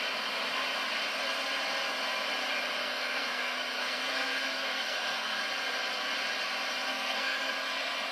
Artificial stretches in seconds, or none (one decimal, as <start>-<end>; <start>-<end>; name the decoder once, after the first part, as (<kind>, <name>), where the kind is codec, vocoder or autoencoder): 2.8-5.4 (codec, SNAC); 6.9-7.5